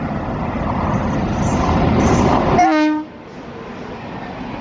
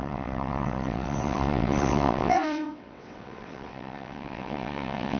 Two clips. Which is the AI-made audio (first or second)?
second